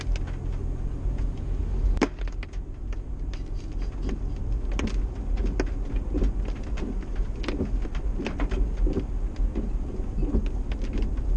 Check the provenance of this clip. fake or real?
real